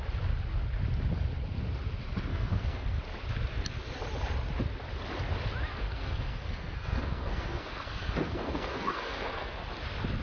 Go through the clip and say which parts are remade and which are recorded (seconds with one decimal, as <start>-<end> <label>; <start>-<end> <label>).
0.0-2.3 recorded; 2.3-3.0 remade; 3.0-5.7 recorded; 5.7-9.5 remade; 9.5-10.2 recorded